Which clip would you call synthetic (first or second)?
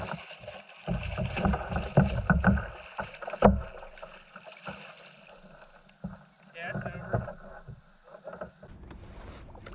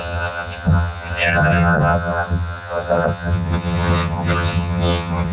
second